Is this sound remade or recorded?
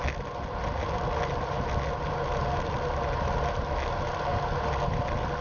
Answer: recorded